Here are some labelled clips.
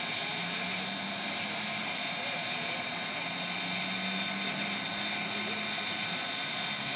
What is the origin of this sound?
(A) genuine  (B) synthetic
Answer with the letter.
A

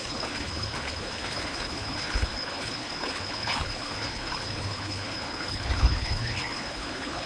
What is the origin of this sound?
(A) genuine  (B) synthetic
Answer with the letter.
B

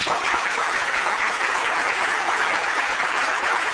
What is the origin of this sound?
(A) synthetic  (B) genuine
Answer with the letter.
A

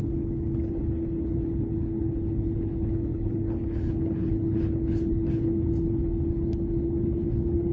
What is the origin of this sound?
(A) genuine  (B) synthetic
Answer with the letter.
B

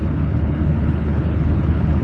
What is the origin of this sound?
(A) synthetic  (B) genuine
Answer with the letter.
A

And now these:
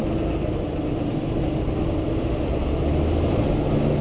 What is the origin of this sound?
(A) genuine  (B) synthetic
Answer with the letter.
A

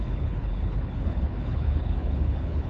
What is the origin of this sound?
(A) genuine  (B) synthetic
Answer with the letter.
B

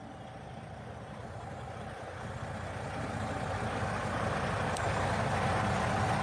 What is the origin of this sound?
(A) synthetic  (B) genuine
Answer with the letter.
B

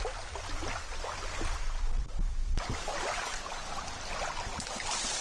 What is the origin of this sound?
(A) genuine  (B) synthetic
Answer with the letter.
A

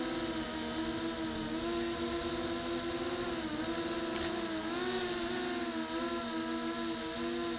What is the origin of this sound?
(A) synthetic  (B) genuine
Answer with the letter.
B